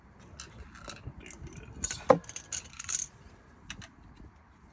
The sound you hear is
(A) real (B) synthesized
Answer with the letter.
A